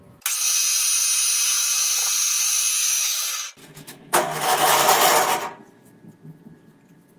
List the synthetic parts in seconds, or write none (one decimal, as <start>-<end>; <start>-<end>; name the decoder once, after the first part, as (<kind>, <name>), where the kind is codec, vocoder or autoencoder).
2.7-3.2 (autoencoder, DAC-VAE); 3.6-4.8